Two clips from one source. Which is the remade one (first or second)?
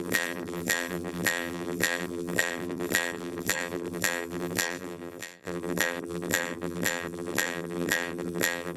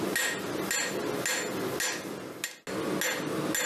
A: first